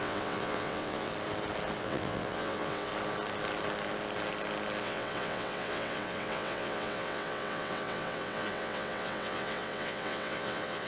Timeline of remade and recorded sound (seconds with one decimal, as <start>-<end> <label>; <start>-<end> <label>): 0.0-1.1 remade; 1.1-1.8 recorded; 1.8-2.9 remade; 2.9-4.8 recorded; 4.8-10.9 remade